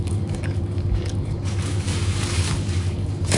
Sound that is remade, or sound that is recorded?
remade